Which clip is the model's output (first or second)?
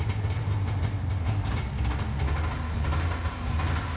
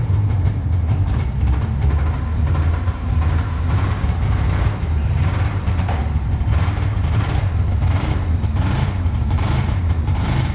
second